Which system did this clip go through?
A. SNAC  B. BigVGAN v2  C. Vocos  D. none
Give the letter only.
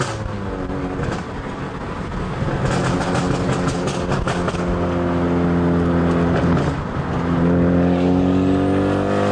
D